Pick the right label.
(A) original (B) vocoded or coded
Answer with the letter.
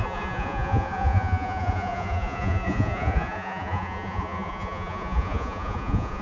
B